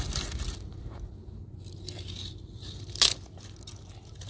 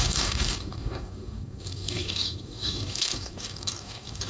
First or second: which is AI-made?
second